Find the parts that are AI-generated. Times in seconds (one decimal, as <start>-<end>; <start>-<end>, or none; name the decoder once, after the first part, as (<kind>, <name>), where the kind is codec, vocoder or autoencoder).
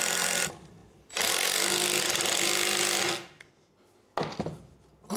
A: none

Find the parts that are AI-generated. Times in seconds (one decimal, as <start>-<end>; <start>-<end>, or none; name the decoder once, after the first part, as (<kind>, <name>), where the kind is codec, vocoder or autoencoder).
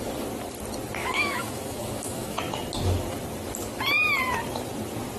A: 1.0-2.4 (autoencoder, DAC-VAE)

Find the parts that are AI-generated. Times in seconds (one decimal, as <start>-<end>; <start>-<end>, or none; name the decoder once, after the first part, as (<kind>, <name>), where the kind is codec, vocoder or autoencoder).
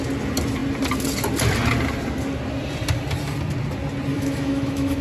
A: 4.1-5.0 (autoencoder, DAC-VAE)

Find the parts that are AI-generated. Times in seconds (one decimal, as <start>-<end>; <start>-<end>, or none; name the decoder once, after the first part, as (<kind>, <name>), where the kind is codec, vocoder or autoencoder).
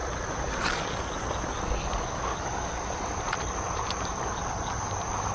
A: none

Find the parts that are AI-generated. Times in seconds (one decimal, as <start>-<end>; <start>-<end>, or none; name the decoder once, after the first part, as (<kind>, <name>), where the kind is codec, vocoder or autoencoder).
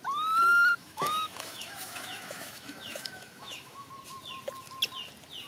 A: 0.8-3.9 (autoencoder, DAC-VAE)